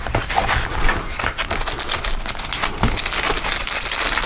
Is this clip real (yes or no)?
yes